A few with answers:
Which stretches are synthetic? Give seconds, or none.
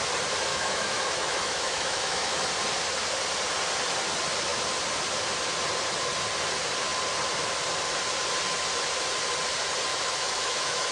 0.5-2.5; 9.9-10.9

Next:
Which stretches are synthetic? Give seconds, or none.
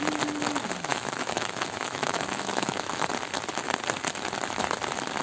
0.9-3.1